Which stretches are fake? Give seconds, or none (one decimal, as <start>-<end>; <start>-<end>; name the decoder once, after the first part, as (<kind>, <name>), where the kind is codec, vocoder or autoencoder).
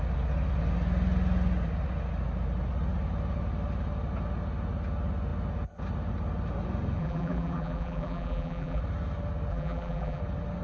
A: 7.0-8.8 (vocoder, BigVGAN v2); 9.5-10.2